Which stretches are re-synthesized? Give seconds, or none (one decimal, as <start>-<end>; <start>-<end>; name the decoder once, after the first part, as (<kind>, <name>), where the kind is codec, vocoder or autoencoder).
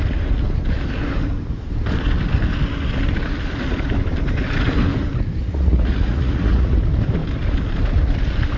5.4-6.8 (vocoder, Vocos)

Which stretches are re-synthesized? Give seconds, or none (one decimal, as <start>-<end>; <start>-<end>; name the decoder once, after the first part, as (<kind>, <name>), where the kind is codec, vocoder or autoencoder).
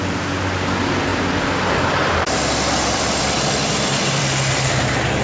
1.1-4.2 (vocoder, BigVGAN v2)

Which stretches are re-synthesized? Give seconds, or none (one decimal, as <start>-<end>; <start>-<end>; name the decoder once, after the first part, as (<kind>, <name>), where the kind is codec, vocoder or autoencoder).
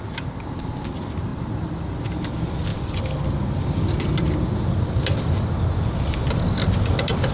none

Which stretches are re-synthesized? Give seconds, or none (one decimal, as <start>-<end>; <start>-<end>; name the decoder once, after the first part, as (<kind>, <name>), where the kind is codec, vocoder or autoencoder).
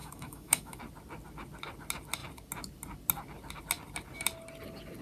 0.0-0.8 (autoencoder, DAC-VAE)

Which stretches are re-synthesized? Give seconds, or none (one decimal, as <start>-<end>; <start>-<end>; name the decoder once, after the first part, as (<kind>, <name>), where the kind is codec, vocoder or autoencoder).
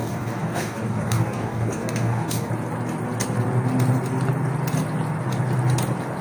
0.0-2.5 (codec, DAC)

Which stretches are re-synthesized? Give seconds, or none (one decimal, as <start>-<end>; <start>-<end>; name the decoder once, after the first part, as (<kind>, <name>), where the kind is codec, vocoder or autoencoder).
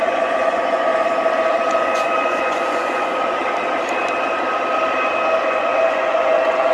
0.0-0.9 (vocoder, Vocos); 1.5-3.4; 5.4-6.7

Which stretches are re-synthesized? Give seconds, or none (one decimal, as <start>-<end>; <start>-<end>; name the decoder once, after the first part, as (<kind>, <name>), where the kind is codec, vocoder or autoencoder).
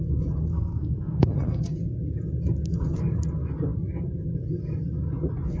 0.5-1.2 (codec, SNAC)